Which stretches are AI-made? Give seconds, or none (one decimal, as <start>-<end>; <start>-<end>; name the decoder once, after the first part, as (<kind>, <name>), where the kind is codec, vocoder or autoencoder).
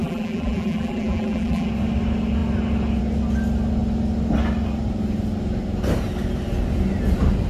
0.0-1.7 (vocoder, BigVGAN v2)